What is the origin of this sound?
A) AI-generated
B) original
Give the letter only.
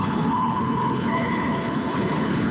A